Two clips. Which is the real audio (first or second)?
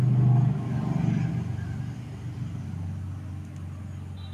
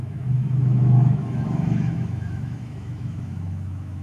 first